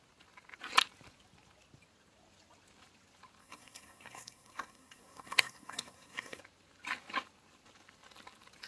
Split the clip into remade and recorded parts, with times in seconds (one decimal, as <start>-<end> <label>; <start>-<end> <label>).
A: 0.0-3.4 recorded; 3.4-6.4 remade; 6.4-8.7 recorded